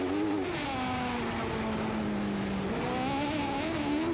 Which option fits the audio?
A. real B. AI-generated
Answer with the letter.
A